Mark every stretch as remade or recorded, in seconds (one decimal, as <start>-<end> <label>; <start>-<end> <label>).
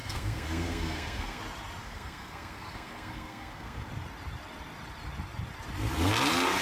0.0-1.4 remade; 1.4-1.8 recorded; 1.8-3.9 remade; 3.9-6.6 recorded